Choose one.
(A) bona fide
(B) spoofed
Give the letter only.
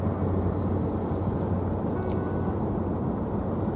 A